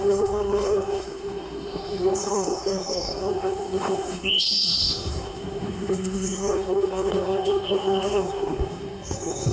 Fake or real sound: fake